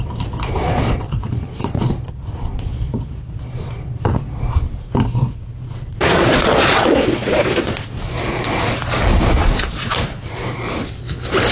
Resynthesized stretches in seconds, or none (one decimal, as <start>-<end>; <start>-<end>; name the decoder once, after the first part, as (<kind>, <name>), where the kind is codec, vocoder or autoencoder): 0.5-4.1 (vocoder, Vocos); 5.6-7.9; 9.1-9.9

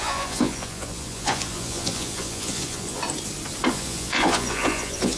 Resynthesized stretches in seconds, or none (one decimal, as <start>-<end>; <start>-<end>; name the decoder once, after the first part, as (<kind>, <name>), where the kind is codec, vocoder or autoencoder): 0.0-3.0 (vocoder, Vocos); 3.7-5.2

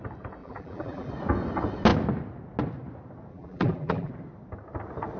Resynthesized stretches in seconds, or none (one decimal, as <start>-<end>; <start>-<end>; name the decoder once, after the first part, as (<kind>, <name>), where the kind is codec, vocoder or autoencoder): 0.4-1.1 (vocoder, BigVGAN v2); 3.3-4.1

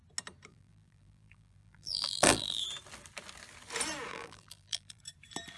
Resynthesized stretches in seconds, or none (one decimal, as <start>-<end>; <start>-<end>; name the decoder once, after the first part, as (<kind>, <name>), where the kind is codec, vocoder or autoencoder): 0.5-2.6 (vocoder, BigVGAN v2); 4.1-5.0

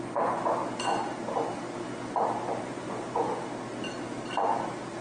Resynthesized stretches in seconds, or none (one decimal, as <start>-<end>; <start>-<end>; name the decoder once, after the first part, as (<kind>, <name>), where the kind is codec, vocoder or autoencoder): 0.0-0.6 (vocoder, Vocos); 2.6-3.4